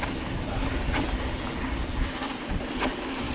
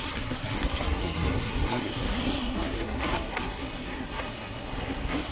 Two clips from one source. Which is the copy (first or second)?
second